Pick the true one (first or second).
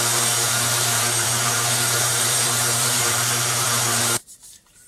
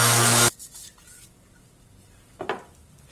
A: second